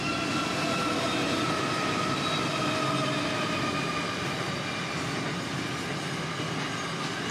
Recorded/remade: recorded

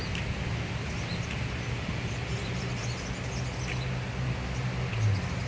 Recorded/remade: recorded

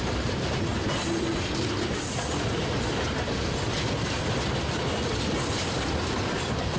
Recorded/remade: recorded